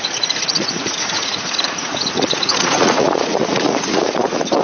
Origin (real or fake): fake